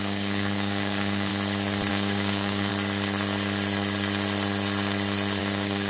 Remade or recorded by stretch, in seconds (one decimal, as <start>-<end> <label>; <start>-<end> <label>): 0.0-1.3 remade; 1.3-1.9 recorded; 1.9-2.7 remade; 2.7-5.4 recorded; 5.4-5.9 remade